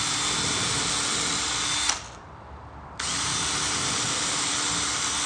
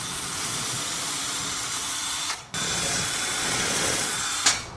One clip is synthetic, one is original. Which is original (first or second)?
first